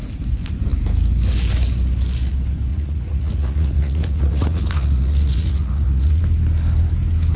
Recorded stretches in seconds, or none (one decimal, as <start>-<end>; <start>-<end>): 0.0-2.7; 6.2-7.4